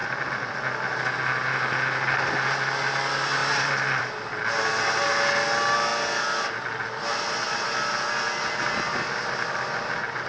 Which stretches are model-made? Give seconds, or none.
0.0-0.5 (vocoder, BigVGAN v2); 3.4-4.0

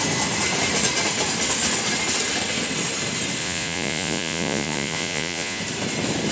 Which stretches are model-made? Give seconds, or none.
3.4-5.6 (vocoder, Vocos)

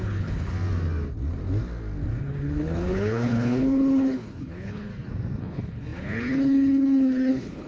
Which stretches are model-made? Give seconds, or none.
0.0-0.5 (codec, HILCodec); 2.2-4.9; 5.4-7.7

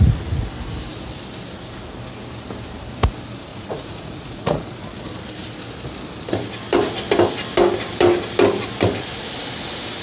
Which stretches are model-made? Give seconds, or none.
3.5-4.7 (vocoder, Vocos)

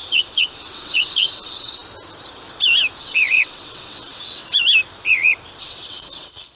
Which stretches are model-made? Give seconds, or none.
0.0-1.8 (vocoder, WaveNeXt); 3.0-4.4; 5.6-6.6

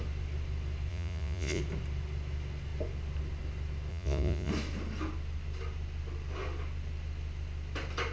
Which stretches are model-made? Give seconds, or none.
0.9-1.6 (vocoder, Vocos); 3.9-4.5

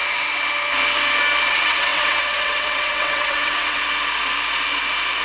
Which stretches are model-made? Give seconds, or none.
1.5-3.8 (vocoder, WaveNeXt)

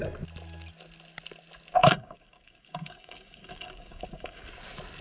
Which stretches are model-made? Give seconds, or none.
1.8-4.5 (codec, DAC)